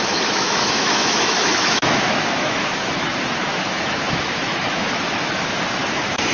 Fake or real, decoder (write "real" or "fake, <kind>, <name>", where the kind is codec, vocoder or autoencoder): fake, autoencoder, DAC-VAE